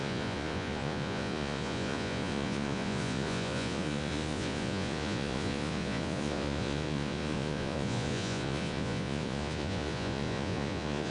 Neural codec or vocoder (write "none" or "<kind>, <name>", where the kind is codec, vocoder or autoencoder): vocoder, Vocos